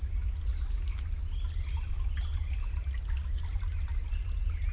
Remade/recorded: recorded